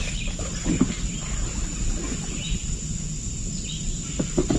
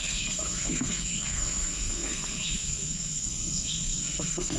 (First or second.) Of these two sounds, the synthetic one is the second